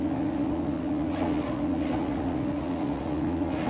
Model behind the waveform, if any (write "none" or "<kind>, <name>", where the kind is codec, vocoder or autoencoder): vocoder, Vocos